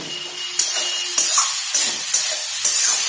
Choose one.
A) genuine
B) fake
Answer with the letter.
A